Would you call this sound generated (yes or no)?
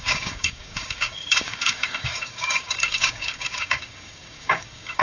yes